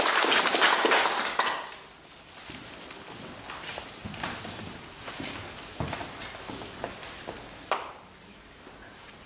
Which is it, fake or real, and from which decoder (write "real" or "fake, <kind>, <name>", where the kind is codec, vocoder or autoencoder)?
real